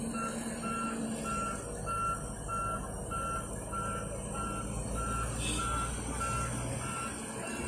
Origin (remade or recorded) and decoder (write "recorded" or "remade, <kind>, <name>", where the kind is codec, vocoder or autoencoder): recorded